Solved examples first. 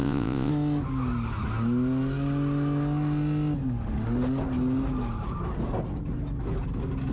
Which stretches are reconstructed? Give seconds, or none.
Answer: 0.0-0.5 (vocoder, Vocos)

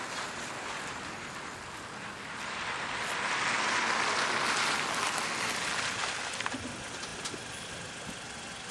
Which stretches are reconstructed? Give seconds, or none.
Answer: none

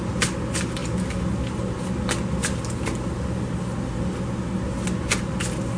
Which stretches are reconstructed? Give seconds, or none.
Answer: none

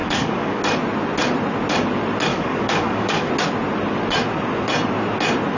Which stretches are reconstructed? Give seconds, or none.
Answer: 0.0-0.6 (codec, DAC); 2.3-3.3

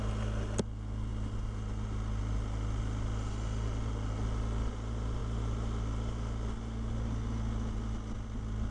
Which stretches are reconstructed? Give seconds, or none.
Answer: none